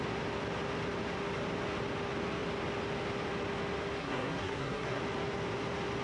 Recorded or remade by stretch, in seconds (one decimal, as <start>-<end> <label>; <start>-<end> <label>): 0.0-4.0 recorded; 4.0-5.0 remade; 5.0-6.0 recorded